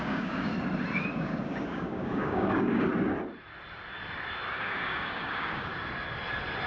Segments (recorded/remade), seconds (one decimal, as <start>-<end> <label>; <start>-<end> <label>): 0.0-0.5 remade; 0.5-1.1 recorded; 1.1-2.9 remade; 2.9-4.5 recorded; 4.5-5.7 remade; 5.7-6.7 recorded